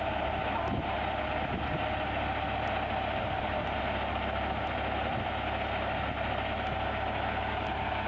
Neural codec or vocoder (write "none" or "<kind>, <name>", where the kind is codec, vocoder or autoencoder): none